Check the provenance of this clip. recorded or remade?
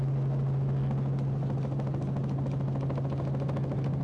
recorded